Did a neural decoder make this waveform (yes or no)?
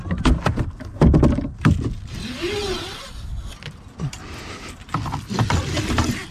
no